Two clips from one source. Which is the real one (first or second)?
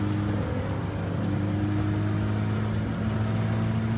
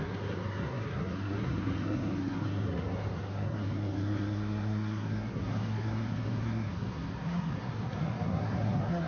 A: first